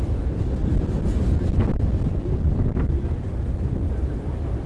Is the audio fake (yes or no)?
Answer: no